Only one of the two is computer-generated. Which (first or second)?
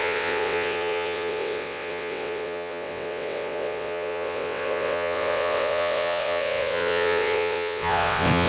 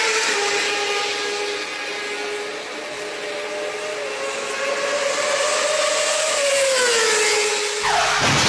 first